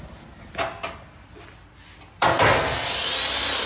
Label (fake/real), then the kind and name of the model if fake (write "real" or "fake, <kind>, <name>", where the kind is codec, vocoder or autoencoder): real